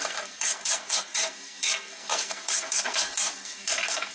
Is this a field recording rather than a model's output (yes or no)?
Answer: no